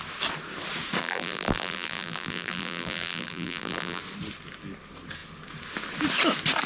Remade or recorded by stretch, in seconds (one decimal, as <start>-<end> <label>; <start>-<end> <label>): 0.0-1.0 recorded; 1.0-4.0 remade; 4.0-6.7 recorded